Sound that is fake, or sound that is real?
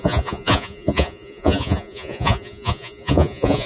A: fake